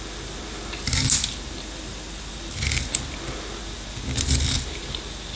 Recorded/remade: recorded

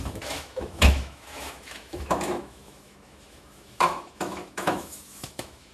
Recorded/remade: remade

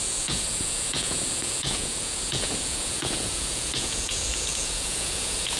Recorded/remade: remade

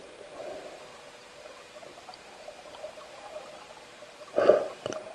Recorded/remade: remade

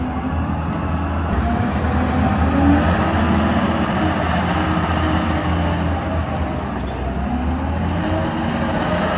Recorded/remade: recorded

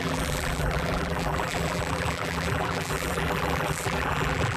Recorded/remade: remade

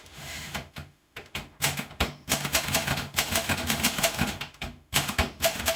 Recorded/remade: remade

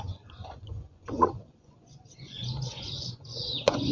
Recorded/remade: remade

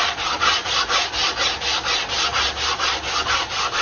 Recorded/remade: recorded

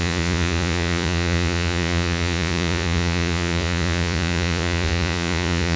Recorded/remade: remade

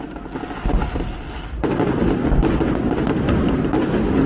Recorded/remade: recorded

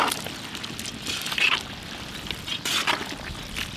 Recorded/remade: recorded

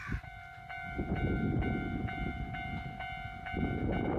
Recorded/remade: recorded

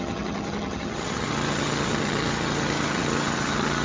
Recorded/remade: remade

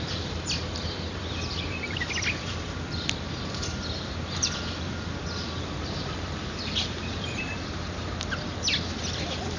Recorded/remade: remade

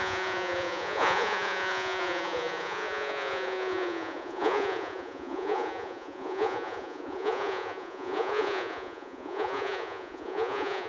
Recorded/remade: remade